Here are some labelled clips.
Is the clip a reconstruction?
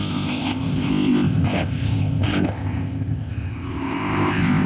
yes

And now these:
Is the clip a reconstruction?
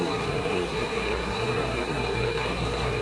yes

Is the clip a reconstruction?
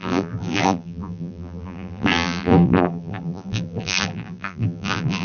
yes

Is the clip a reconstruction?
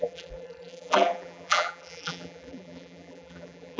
yes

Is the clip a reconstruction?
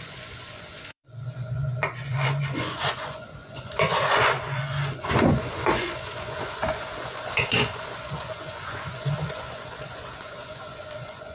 yes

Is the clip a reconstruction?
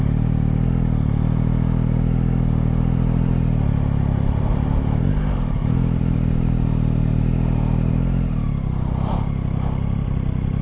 no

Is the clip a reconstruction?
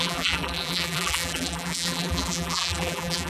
yes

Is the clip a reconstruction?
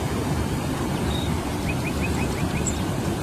yes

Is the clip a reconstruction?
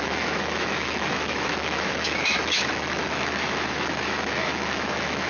yes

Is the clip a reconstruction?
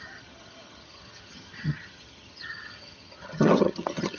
yes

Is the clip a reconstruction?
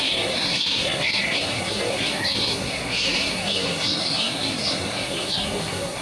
yes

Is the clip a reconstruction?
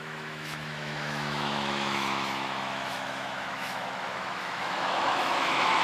yes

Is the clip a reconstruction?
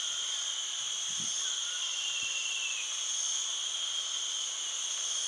no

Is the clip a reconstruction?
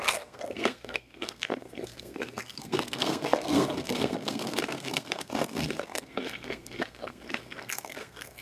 yes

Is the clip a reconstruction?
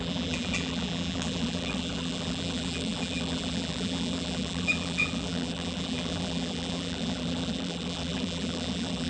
yes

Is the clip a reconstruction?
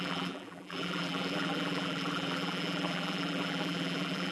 yes